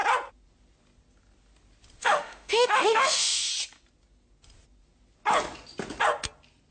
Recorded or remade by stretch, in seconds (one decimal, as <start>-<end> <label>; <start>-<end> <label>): 0.0-2.0 recorded; 2.0-3.5 remade; 3.5-6.7 recorded